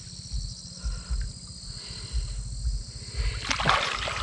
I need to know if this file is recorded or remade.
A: recorded